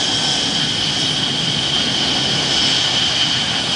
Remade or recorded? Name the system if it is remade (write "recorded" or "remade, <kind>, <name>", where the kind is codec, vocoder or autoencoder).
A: recorded